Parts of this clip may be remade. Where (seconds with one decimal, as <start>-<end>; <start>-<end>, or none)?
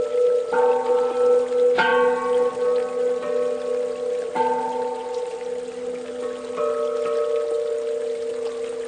none